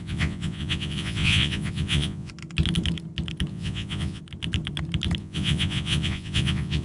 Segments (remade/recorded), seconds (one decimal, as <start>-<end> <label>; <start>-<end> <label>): 0.0-2.3 remade; 2.3-3.5 recorded; 3.5-4.2 remade; 4.2-5.2 recorded; 5.2-6.8 remade